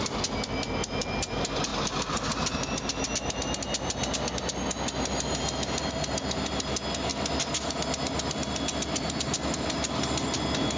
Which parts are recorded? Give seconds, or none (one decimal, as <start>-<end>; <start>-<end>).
0.0-10.8